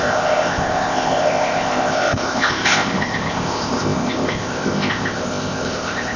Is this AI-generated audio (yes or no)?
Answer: yes